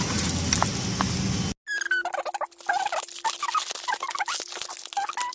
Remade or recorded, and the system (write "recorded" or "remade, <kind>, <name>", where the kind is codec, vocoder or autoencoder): recorded